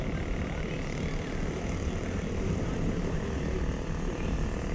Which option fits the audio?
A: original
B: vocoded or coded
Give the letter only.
B